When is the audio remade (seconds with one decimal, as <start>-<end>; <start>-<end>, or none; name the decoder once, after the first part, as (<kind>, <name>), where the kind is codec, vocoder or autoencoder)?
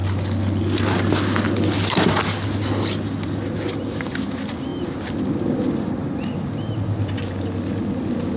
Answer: none